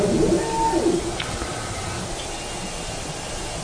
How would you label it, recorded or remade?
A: recorded